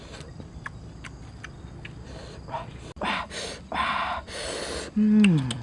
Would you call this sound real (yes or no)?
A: yes